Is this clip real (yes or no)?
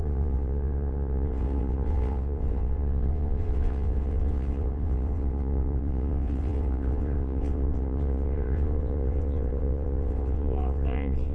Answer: no